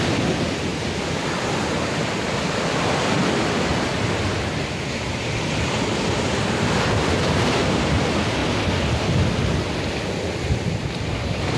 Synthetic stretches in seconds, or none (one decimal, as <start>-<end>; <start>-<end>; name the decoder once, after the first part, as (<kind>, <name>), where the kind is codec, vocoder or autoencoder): 0.0-8.4 (vocoder, BigVGAN v2); 9.9-11.6